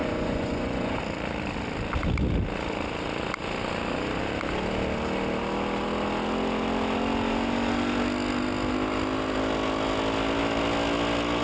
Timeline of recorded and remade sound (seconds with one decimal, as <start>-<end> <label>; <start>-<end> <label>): 0.0-1.0 remade; 1.0-11.4 recorded